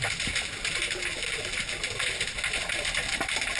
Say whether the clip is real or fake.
real